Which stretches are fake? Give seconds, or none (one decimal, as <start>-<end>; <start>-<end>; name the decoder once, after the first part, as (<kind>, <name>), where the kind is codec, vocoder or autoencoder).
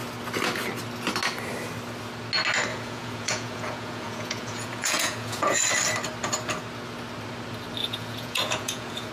2.7-5.6 (vocoder, Vocos); 7.8-9.1